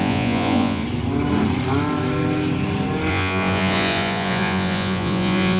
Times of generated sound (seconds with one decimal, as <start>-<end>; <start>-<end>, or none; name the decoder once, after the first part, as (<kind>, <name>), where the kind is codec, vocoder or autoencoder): 0.0-0.8 (vocoder, Vocos); 3.1-5.6